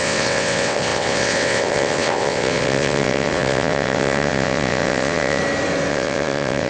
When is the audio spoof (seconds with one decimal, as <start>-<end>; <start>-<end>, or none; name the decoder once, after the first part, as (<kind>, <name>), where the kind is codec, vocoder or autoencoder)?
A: 0.0-5.4 (vocoder, WaveNeXt); 5.9-6.7